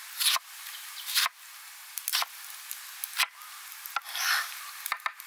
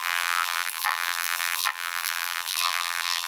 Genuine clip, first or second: first